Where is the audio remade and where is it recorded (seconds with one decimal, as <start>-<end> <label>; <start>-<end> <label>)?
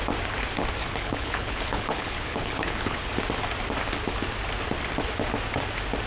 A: 0.0-0.8 recorded; 0.8-3.0 remade; 3.0-6.1 recorded